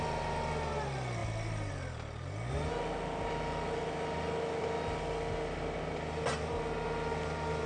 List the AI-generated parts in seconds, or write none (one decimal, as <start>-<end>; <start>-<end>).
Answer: none

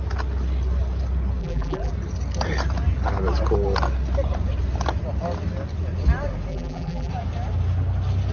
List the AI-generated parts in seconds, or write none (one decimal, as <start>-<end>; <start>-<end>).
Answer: 1.4-1.9; 6.5-7.1